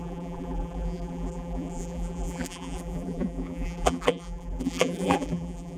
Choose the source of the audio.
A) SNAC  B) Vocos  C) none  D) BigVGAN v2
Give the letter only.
D